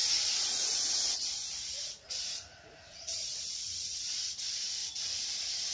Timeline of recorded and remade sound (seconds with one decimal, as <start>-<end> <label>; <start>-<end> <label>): 0.0-4.8 remade; 4.8-5.3 recorded; 5.3-5.7 remade